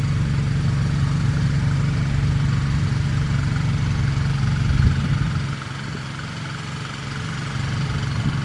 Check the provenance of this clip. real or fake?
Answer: real